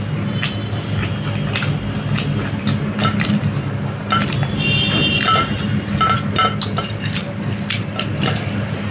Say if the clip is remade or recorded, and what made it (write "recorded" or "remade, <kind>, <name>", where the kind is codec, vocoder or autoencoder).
recorded